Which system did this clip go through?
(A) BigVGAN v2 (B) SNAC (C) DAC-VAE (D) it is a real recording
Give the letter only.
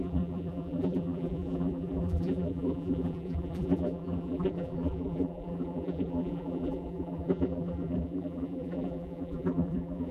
A